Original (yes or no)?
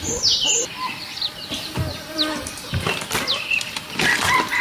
yes